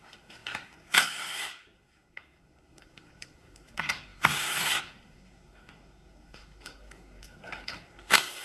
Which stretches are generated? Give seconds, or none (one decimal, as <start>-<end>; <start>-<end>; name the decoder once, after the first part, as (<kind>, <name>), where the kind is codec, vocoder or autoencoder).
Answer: 0.0-8.4 (codec, SNAC)